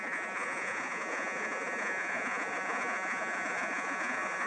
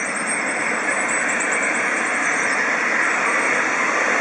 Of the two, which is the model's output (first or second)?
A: first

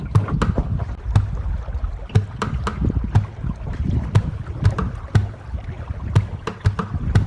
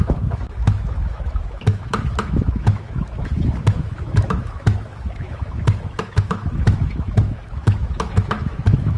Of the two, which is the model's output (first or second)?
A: second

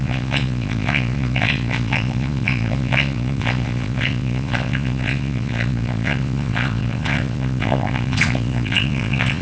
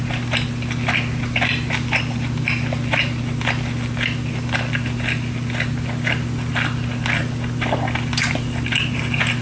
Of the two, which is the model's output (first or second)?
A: first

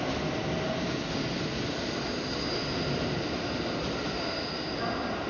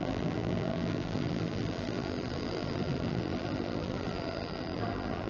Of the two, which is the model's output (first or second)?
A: second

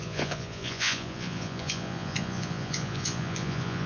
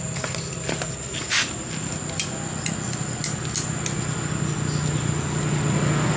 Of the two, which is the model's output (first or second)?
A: first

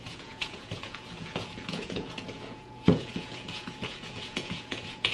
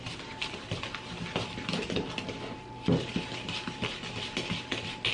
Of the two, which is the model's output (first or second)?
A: first